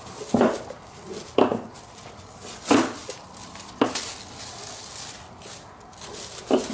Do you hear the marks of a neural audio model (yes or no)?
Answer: no